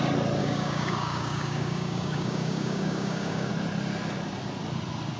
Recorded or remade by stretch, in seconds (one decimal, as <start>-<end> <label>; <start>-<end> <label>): 0.0-0.4 recorded; 0.4-3.5 remade; 3.5-5.2 recorded